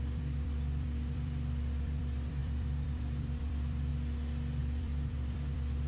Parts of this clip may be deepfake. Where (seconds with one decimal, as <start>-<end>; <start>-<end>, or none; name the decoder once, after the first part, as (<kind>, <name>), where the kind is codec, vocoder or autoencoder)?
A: 0.0-3.9 (vocoder, BigVGAN v2); 4.6-5.9